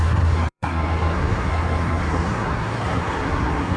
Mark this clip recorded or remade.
remade